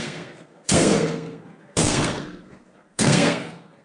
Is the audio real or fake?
fake